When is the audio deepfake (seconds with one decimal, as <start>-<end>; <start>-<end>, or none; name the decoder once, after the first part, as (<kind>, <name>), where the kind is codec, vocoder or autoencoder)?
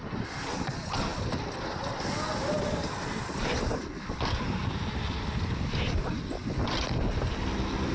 1.1-2.2 (vocoder, BigVGAN v2); 4.6-6.4